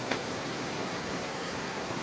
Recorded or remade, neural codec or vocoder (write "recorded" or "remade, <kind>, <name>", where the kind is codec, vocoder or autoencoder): remade, codec, SNAC